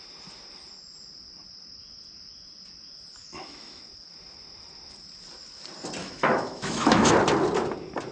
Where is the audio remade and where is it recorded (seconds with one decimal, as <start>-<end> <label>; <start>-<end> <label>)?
0.0-3.2 recorded; 3.2-3.8 remade; 3.8-6.0 recorded; 6.0-7.1 remade; 7.1-8.1 recorded